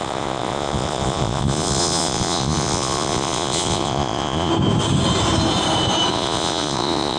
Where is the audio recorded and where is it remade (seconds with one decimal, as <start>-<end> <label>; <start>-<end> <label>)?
0.0-4.5 remade; 4.5-6.1 recorded; 6.1-7.2 remade